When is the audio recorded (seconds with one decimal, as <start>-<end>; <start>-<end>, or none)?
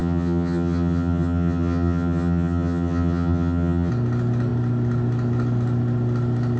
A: 3.9-6.6